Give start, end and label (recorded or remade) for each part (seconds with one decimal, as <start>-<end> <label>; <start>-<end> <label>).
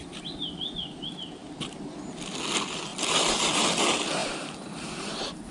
0.0-1.4 recorded; 1.4-2.3 remade; 2.3-2.9 recorded; 2.9-3.8 remade; 3.8-4.2 recorded; 4.2-5.0 remade; 5.0-5.5 recorded